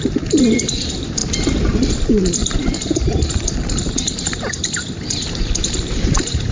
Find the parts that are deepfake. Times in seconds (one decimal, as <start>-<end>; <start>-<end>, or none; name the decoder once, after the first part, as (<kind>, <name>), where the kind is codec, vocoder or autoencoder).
0.0-1.2 (vocoder, BigVGAN v2); 1.9-6.5